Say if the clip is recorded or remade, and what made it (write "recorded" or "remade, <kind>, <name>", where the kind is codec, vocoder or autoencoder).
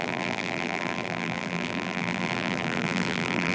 remade, vocoder, BigVGAN v2